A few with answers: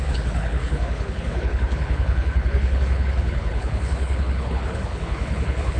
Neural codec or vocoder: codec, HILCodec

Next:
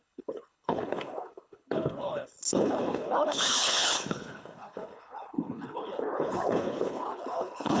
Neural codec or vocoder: codec, HILCodec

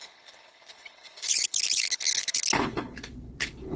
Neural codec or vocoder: codec, HILCodec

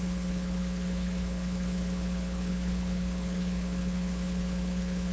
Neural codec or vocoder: codec, HILCodec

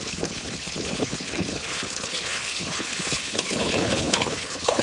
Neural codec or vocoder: codec, HILCodec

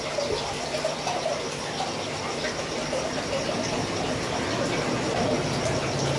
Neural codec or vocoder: none